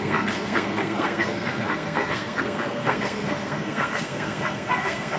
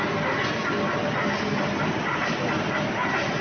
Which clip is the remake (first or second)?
first